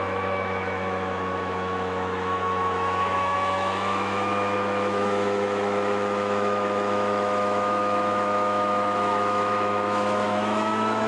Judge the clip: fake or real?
fake